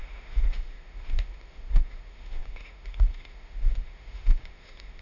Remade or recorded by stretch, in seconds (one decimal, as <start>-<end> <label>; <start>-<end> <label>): 0.0-5.0 remade